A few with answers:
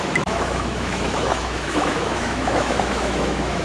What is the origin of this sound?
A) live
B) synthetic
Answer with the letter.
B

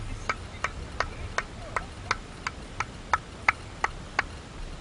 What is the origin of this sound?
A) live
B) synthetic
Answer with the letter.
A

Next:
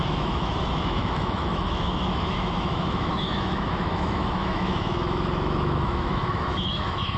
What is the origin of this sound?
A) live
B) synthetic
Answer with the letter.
B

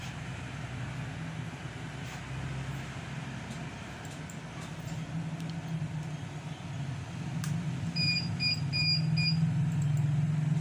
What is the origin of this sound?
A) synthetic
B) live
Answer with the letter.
B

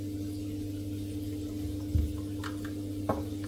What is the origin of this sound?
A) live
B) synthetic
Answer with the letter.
A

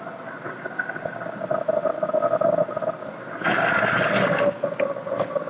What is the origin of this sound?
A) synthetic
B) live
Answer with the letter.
B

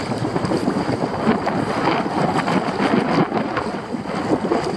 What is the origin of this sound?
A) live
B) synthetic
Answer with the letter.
A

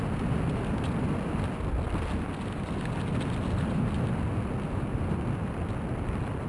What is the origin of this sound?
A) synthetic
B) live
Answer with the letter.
B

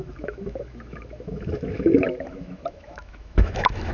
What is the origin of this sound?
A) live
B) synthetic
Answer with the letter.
B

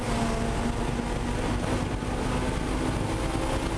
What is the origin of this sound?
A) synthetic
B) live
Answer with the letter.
B